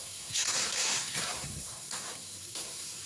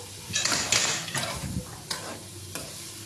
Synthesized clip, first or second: first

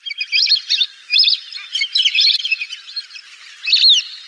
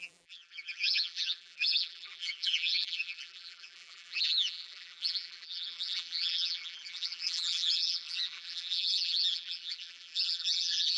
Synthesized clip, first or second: second